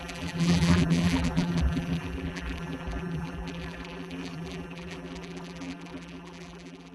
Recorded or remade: remade